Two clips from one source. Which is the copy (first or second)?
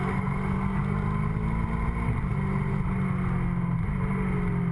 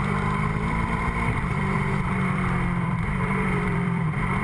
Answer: second